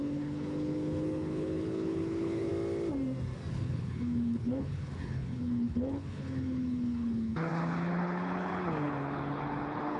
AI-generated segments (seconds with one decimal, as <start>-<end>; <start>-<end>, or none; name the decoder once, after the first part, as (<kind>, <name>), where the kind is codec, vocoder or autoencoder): 0.0-2.5 (codec, HILCodec); 3.5-10.0